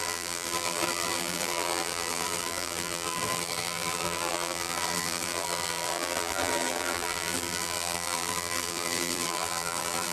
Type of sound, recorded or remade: remade